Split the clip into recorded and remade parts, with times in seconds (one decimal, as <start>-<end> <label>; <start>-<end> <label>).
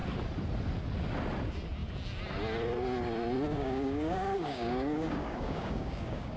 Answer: 0.0-3.5 recorded; 3.5-6.4 remade